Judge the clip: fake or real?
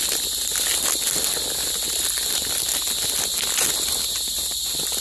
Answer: real